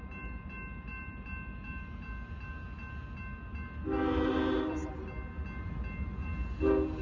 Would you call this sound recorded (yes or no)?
yes